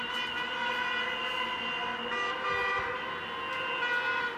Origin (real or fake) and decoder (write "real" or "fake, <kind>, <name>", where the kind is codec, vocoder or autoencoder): real